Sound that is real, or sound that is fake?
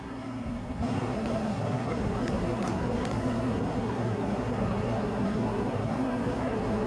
fake